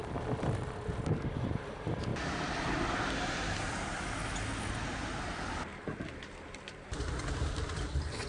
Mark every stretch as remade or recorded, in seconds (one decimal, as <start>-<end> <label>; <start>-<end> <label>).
0.0-2.1 recorded; 2.1-3.0 remade; 3.0-5.7 recorded; 5.7-7.2 remade; 7.2-8.3 recorded